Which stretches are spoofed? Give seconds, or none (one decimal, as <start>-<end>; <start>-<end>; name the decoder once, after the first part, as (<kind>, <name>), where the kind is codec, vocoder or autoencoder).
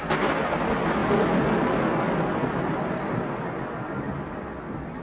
none